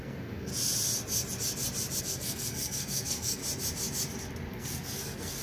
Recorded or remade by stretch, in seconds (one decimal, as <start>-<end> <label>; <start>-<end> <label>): 0.0-0.5 remade; 0.5-2.0 recorded; 2.0-3.4 remade; 3.4-4.5 recorded; 4.5-5.4 remade

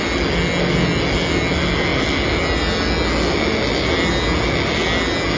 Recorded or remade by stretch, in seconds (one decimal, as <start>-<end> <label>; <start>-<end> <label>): 0.0-5.4 recorded